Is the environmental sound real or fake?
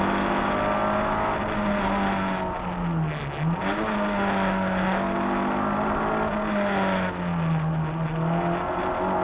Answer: real